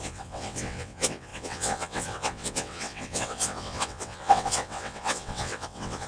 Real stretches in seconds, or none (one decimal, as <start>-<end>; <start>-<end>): none